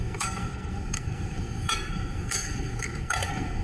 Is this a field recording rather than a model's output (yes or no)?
no